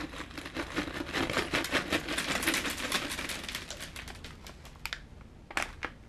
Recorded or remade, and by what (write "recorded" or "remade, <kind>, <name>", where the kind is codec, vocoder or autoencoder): recorded